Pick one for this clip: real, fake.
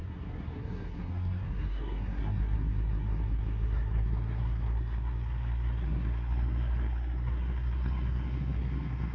fake